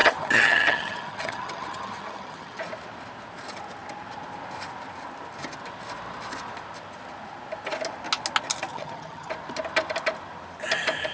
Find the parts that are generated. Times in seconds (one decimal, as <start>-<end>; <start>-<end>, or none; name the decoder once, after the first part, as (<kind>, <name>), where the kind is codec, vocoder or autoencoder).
0.0-2.6 (vocoder, HiFi-GAN); 8.7-9.3